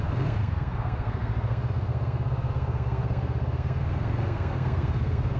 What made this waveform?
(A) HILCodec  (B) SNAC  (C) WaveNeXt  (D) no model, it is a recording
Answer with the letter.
B